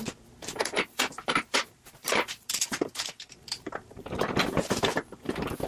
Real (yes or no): no